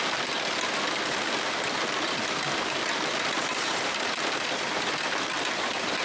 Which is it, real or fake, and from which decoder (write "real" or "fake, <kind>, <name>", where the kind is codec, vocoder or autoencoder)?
real